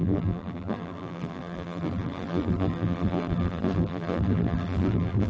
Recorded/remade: remade